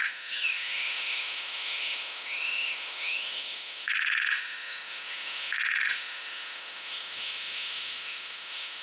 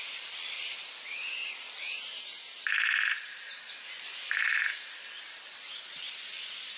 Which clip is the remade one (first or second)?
first